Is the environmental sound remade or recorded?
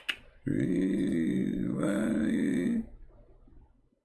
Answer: recorded